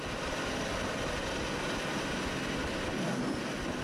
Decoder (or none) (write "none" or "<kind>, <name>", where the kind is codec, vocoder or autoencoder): none